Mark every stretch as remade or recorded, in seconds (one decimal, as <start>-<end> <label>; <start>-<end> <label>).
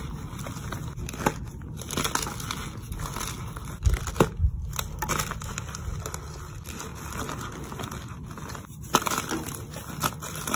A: 0.0-10.6 recorded